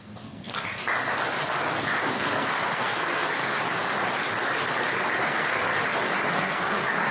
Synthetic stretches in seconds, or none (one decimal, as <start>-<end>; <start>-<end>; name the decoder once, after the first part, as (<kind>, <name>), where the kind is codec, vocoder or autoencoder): 0.0-0.8 (codec, SNAC); 2.1-3.4; 5.2-5.7; 6.3-7.1